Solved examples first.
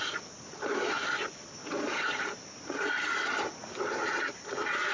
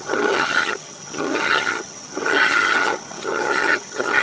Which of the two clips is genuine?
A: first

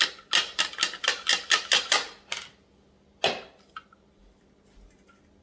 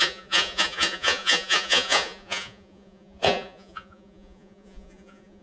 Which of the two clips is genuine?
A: first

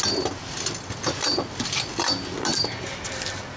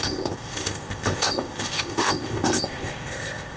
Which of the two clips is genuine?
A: first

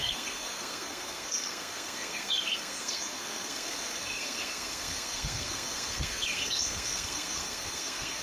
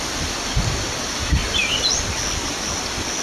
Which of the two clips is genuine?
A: second